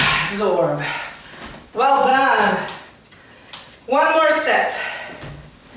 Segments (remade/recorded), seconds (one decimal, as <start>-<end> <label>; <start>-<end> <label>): 0.0-5.8 recorded